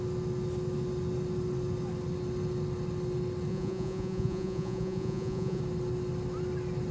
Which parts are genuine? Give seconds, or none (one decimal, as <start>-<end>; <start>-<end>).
0.0-3.5; 5.6-6.9